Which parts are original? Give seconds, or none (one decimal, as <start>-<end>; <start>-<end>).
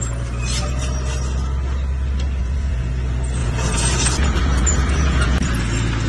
0.0-2.4; 2.9-3.4; 5.6-6.1